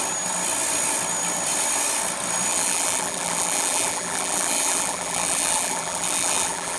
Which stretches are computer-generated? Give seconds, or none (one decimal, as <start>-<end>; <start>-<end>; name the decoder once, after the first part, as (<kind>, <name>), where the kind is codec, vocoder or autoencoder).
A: 2.5-6.8 (vocoder, BigVGAN v2)